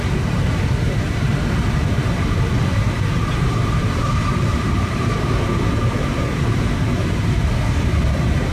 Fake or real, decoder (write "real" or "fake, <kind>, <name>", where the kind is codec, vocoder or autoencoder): fake, vocoder, BigVGAN v2